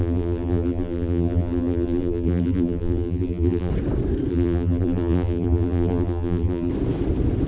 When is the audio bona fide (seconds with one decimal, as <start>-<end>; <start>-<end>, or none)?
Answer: 3.7-4.3; 6.7-7.5